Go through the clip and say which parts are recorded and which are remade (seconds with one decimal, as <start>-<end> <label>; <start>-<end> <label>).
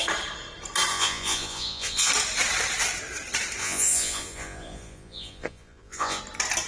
0.0-0.9 recorded; 0.9-2.1 remade; 2.1-3.6 recorded; 3.6-6.2 remade; 6.2-6.7 recorded